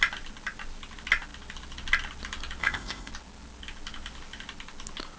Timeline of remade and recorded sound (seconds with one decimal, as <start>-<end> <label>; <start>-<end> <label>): 0.0-2.6 recorded; 2.6-3.1 remade; 3.1-5.2 recorded